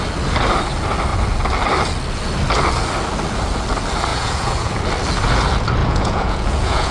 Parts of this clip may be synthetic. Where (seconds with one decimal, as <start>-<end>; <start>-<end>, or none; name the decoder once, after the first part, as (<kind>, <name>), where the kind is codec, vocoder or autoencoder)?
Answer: 4.1-4.8 (vocoder, Vocos); 5.8-6.9